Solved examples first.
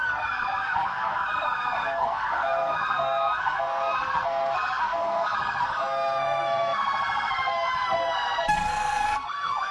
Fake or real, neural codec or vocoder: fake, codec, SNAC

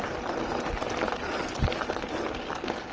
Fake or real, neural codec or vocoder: real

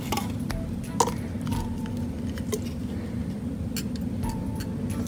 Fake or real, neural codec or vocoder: real